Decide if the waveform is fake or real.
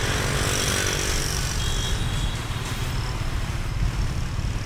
real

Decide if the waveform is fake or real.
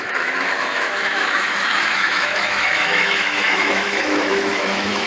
fake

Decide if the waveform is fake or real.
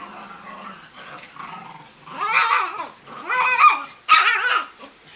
real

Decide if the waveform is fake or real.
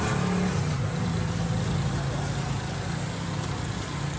real